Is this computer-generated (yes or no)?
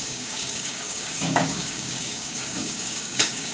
yes